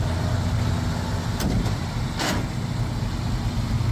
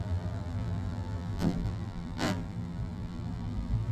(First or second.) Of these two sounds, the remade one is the second